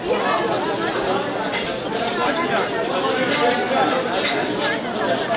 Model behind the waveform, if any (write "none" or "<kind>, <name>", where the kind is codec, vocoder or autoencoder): none